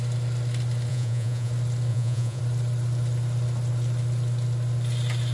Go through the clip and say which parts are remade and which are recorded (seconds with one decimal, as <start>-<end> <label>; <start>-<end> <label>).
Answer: 0.0-0.9 recorded; 0.9-1.5 remade; 1.5-1.9 recorded; 1.9-2.4 remade; 2.4-5.3 recorded